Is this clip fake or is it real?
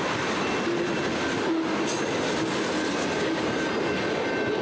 real